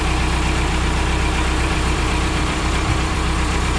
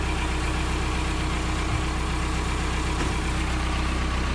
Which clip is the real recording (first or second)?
second